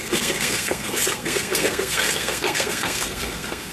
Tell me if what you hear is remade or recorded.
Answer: remade